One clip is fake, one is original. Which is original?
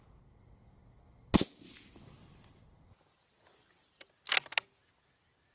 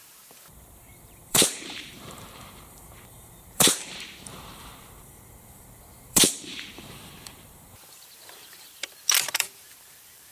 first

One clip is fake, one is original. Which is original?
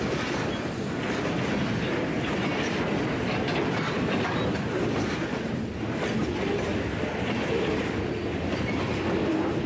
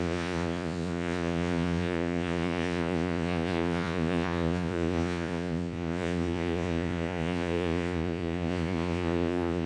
first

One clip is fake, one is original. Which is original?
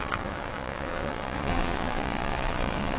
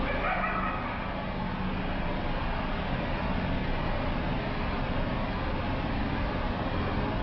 second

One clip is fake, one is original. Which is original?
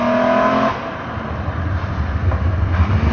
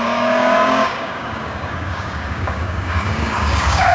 first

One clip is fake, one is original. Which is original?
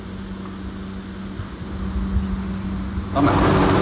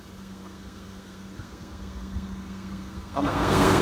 first